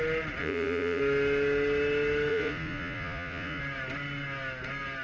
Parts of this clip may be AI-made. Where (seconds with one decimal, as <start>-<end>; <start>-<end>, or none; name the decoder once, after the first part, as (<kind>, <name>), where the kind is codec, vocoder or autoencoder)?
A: 0.4-1.0 (vocoder, Vocos); 2.3-3.6